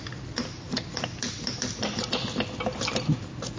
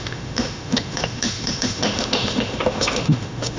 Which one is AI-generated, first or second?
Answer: second